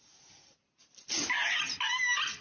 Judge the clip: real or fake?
real